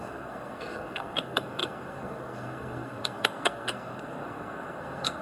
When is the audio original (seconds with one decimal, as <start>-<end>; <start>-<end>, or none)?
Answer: none